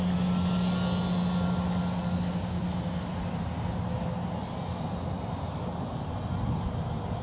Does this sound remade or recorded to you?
recorded